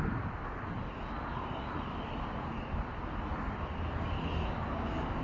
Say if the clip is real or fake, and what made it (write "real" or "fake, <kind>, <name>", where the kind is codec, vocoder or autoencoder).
real